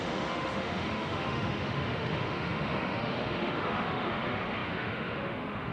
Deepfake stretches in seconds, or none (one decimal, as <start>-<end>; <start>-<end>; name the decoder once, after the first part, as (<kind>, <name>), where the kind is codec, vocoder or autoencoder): 0.0-5.7 (autoencoder, DAC-VAE)